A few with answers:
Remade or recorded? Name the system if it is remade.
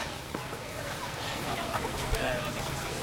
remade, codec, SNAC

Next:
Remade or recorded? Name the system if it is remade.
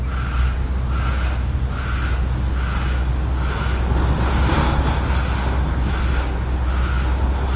recorded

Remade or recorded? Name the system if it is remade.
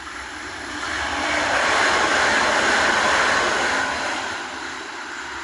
recorded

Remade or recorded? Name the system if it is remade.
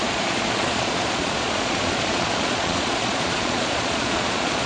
remade, vocoder, Vocos